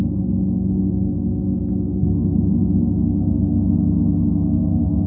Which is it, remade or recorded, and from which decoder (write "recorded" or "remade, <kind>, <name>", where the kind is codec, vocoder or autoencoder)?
recorded